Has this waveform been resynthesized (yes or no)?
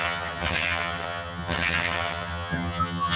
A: yes